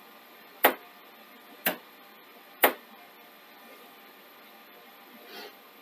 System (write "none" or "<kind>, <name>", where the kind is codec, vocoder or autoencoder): none